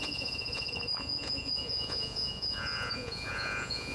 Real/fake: fake